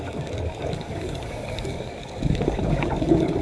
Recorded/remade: remade